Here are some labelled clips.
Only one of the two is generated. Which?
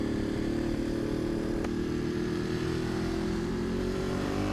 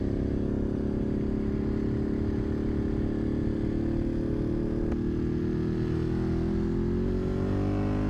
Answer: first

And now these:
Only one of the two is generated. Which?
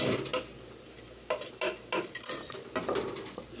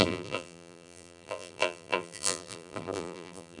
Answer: second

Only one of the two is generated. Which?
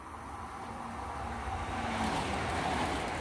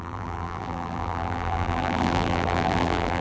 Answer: second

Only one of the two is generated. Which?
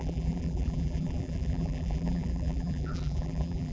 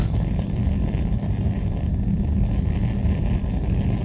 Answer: first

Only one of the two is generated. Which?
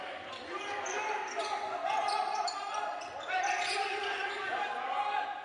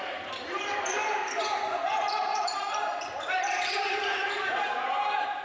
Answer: second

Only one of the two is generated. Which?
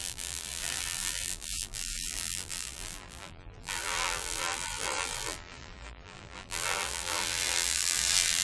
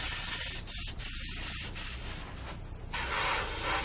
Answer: first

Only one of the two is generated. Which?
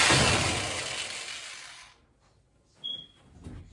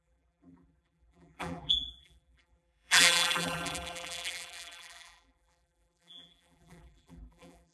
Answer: second